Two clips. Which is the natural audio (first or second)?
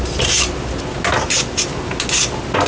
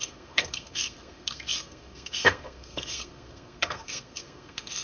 first